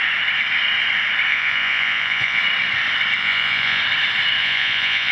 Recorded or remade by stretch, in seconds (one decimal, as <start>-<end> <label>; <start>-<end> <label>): 0.0-1.3 recorded; 1.3-2.4 remade; 2.4-3.2 recorded; 3.2-3.8 remade; 3.8-4.4 recorded; 4.4-5.1 remade